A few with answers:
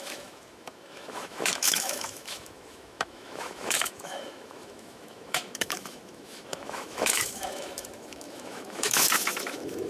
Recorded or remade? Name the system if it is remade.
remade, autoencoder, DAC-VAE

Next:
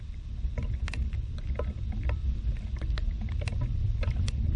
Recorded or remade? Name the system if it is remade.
recorded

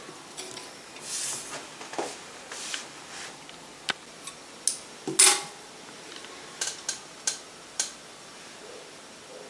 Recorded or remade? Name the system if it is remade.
recorded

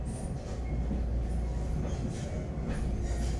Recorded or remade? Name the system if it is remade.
recorded